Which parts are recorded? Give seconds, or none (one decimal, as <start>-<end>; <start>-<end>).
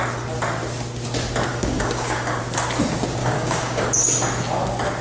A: 0.0-1.5; 2.4-3.2; 3.8-5.0